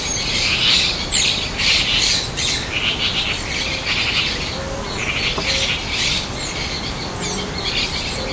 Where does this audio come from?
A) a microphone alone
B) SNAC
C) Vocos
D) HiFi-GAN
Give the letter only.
A